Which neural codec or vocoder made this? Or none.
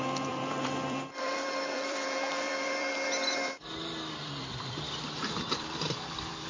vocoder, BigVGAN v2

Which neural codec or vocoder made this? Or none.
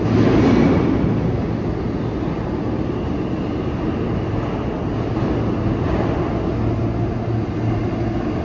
none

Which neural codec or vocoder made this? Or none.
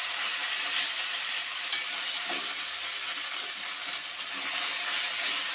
none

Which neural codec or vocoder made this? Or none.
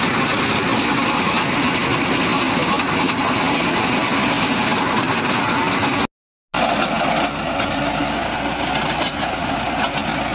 none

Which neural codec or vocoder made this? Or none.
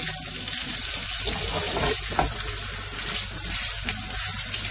none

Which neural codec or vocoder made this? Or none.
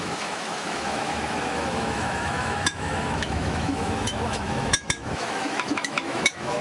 autoencoder, DAC-VAE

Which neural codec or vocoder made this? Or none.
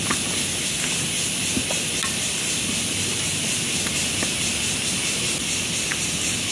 none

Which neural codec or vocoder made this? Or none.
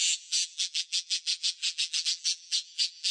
vocoder, BigVGAN v2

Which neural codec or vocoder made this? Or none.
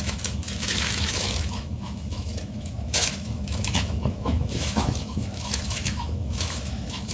autoencoder, DAC-VAE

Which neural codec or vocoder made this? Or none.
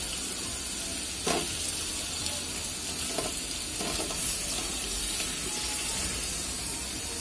none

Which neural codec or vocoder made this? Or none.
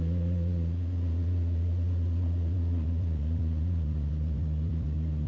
vocoder, Vocos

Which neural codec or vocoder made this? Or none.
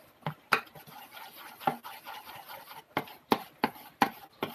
none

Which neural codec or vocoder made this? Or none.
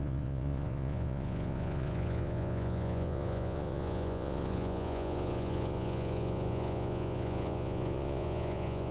vocoder, Vocos